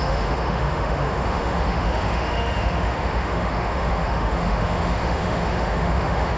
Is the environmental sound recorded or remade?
remade